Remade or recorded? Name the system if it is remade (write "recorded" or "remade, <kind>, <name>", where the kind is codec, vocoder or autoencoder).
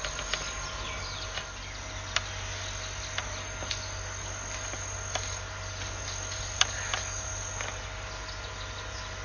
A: recorded